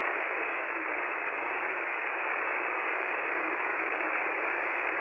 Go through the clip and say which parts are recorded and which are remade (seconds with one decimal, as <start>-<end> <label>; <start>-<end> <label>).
0.0-5.0 remade